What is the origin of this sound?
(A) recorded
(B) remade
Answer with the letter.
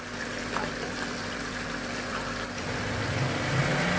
A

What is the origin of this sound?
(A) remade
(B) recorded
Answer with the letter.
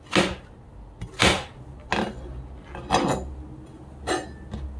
B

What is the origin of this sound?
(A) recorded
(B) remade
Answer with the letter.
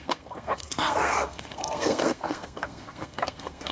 B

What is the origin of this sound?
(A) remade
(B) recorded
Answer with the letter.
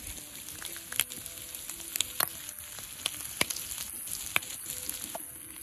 B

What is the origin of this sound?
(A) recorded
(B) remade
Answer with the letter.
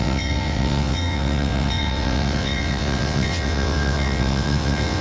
B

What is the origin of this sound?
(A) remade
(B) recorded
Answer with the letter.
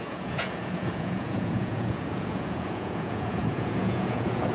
A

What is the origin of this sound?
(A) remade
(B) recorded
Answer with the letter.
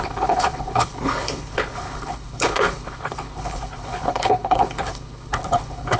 A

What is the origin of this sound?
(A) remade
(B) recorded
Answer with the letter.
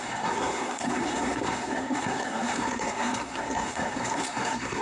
A